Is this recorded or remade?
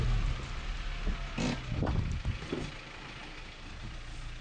recorded